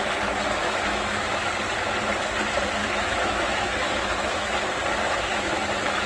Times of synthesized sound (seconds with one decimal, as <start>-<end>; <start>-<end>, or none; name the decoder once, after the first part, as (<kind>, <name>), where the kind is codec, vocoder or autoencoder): 0.6-1.5 (autoencoder, DAC-VAE); 2.8-4.5; 5.3-6.1